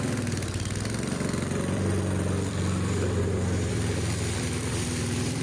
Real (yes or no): no